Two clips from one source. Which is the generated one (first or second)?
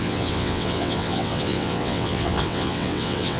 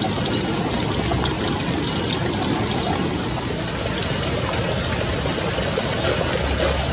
first